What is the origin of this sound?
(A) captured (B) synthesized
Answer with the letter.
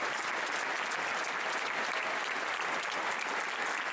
A